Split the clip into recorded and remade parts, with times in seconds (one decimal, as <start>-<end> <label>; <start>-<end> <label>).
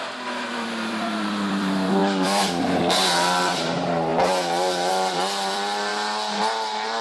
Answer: 0.0-4.1 remade; 4.1-4.9 recorded; 4.9-5.9 remade; 5.9-6.4 recorded; 6.4-7.0 remade